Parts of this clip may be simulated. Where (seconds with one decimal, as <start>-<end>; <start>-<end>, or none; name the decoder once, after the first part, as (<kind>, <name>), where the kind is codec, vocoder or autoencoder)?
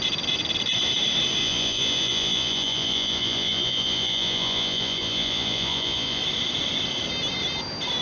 1.4-6.2 (vocoder, Vocos)